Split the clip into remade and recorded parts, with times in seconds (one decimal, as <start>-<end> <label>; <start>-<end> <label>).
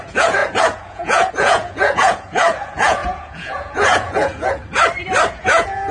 0.0-4.6 remade; 4.6-5.3 recorded; 5.3-5.9 remade